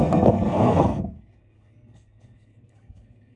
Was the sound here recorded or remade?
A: remade